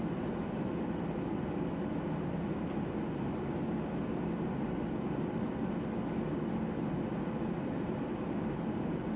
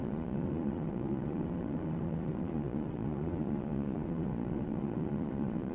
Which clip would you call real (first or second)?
first